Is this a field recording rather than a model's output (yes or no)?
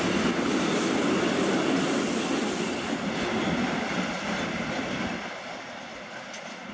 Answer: yes